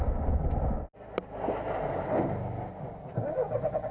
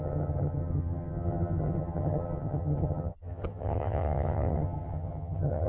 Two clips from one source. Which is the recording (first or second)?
first